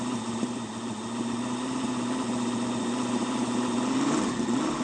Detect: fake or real real